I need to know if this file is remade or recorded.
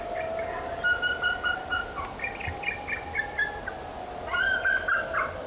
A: recorded